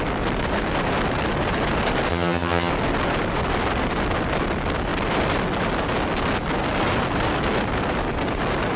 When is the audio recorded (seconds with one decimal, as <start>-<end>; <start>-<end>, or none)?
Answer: 0.0-2.1; 2.7-8.8

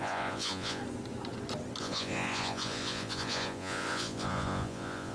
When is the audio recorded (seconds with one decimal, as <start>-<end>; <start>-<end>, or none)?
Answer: 0.8-1.8